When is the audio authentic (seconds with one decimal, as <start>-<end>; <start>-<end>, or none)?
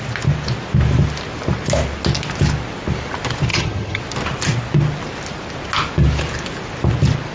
0.0-3.5; 4.0-7.3